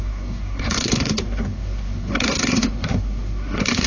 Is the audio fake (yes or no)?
yes